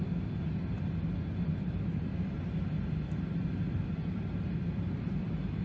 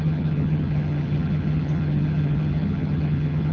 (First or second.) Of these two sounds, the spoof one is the second